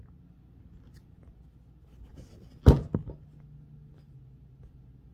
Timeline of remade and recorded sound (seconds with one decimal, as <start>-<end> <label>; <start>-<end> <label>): 0.0-5.1 recorded

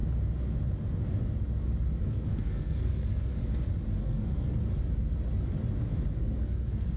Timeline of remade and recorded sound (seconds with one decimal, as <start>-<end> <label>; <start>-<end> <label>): 0.0-2.0 recorded; 2.0-3.4 remade; 3.4-4.0 recorded; 4.0-4.6 remade; 4.6-6.1 recorded; 6.1-7.0 remade